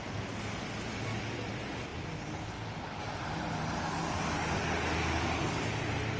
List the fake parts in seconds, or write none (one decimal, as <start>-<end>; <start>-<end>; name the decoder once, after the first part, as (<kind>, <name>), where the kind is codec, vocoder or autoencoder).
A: none

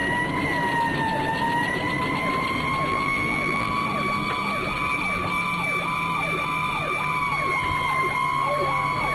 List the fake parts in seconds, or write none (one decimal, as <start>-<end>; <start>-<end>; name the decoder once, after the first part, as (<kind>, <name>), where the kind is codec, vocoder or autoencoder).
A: 2.9-3.7 (vocoder, BigVGAN v2)

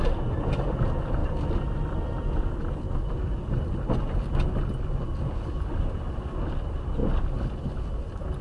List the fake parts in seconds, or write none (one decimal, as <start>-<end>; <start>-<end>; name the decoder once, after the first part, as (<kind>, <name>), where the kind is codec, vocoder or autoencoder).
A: none